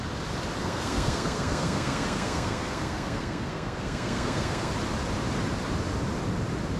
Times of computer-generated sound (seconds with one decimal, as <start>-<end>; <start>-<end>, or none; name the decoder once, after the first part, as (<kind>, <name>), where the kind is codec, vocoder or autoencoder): 0.6-4.7 (codec, SNAC)